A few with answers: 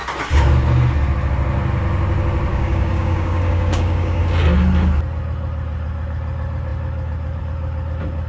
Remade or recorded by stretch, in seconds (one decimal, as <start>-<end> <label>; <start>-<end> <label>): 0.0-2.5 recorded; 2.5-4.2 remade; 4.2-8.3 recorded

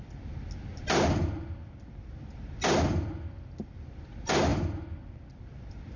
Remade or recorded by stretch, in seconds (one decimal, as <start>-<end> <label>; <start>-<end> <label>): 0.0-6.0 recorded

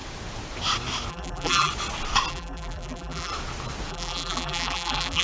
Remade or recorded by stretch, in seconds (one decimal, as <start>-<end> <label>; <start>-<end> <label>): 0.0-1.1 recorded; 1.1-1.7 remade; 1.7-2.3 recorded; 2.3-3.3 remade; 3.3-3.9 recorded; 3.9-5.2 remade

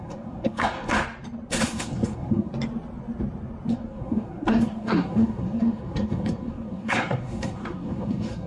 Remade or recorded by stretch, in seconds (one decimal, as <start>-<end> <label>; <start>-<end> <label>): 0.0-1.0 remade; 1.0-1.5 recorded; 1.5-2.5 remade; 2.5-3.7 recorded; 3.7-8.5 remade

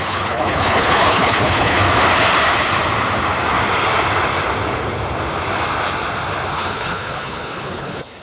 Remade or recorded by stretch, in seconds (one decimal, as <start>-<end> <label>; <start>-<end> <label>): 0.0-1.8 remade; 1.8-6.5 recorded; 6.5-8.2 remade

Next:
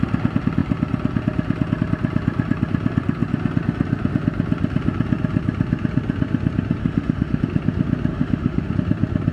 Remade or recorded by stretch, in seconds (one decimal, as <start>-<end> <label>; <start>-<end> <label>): 0.0-6.8 recorded; 6.8-7.4 remade; 7.4-8.1 recorded; 8.1-8.7 remade; 8.7-9.3 recorded